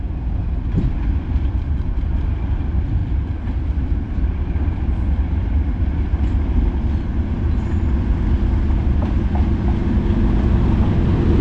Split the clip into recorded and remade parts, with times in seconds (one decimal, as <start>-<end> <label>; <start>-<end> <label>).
0.0-3.0 recorded; 3.0-4.4 remade; 4.4-11.4 recorded